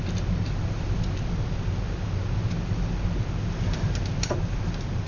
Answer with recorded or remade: recorded